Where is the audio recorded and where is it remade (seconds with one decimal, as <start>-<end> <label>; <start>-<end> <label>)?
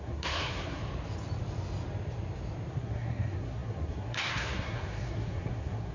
0.0-0.8 remade; 0.8-2.7 recorded; 2.7-5.9 remade